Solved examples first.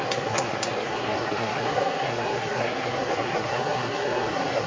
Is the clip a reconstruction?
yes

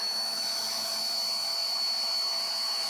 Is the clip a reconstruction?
yes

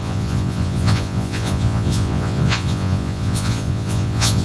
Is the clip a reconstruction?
yes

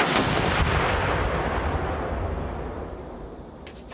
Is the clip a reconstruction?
no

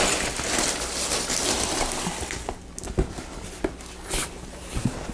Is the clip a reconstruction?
no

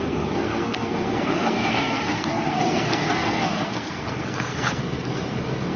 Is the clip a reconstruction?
yes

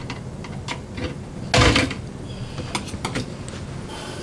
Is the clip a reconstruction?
no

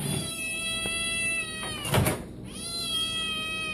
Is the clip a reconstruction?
no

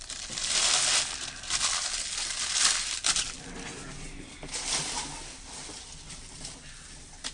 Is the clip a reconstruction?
no